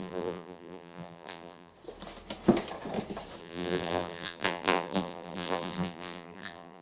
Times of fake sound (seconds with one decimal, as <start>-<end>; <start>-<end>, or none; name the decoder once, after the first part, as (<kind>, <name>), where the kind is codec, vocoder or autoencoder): 0.0-1.7 (vocoder, BigVGAN v2); 3.4-6.8